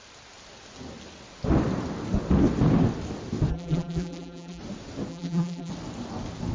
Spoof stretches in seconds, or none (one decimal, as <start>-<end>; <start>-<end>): 3.5-4.6; 5.1-5.7